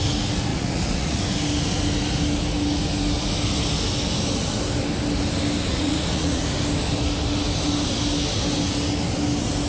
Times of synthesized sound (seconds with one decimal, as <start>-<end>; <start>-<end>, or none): 0.5-1.2; 5.7-6.4